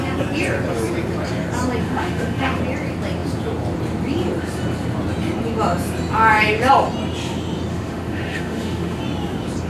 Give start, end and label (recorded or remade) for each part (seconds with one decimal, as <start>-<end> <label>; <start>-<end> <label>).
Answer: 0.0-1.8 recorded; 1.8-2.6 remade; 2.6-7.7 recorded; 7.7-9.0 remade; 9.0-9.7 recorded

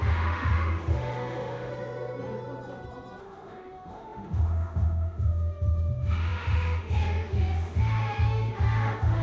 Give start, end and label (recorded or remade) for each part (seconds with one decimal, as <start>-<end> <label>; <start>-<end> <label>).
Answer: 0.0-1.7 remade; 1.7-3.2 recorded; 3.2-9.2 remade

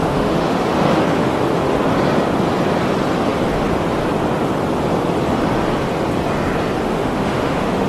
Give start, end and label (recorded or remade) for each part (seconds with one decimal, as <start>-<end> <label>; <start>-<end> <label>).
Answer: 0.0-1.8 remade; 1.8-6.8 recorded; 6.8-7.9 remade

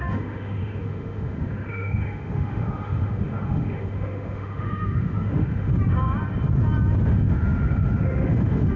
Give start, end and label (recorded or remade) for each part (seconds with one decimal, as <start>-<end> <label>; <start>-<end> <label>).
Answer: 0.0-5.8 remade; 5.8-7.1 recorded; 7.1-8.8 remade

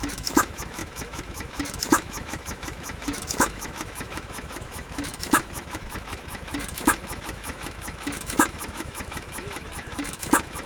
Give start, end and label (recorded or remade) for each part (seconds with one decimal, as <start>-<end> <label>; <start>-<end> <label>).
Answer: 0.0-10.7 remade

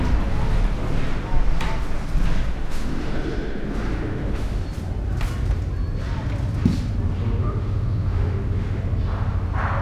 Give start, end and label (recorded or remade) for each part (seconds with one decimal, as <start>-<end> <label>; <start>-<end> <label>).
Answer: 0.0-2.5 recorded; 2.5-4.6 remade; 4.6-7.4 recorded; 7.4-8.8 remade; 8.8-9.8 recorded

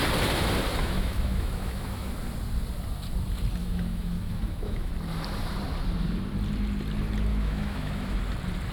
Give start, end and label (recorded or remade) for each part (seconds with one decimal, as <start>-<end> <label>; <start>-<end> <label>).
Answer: 0.0-0.8 recorded; 0.8-2.1 remade; 2.1-3.6 recorded; 3.6-4.9 remade; 4.9-7.3 recorded; 7.3-8.2 remade; 8.2-8.7 recorded